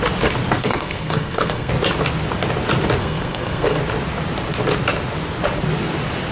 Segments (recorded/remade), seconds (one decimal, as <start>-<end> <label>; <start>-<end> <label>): 0.0-0.6 recorded; 0.6-1.7 remade; 1.7-3.0 recorded; 3.0-3.8 remade; 3.8-6.3 recorded